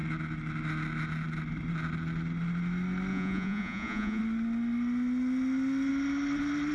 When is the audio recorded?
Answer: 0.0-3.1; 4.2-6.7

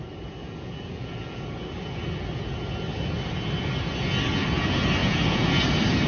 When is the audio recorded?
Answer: 0.0-0.4; 1.4-5.0; 5.5-6.1